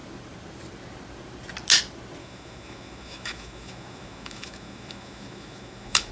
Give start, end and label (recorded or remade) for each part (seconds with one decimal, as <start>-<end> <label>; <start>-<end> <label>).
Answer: 0.0-2.2 recorded; 2.2-6.1 remade